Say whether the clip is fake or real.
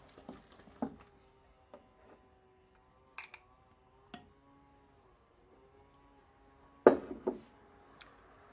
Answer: real